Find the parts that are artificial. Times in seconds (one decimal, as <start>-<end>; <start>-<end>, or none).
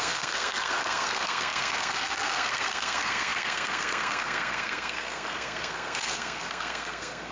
0.0-7.3